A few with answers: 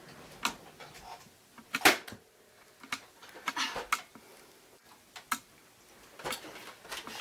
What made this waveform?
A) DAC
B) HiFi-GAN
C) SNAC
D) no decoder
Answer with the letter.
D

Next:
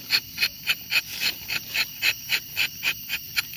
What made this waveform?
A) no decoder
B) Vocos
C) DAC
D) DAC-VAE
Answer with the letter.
A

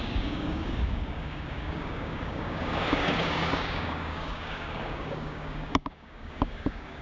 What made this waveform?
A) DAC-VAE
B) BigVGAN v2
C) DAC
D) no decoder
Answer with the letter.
C